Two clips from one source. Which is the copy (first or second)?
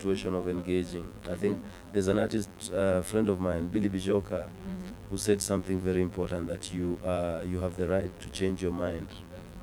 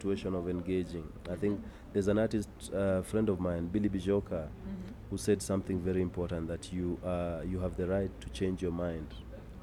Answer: first